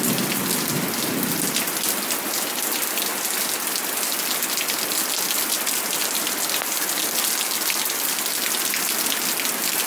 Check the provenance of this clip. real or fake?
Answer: real